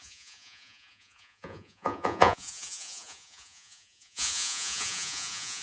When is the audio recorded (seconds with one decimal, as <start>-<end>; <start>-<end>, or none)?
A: none